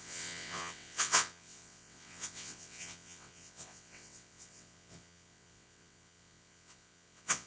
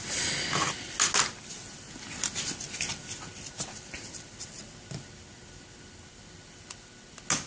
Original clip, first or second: second